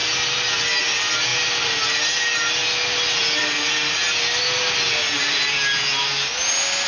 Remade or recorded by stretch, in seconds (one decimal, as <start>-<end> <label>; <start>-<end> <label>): 0.0-6.9 recorded